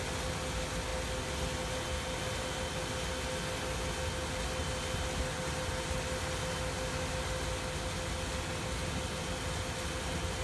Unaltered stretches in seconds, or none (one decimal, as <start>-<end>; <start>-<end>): 0.0-10.4